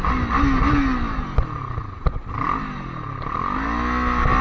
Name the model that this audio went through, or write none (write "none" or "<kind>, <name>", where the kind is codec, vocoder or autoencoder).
none